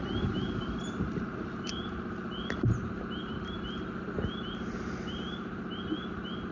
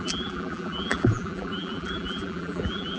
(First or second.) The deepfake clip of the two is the second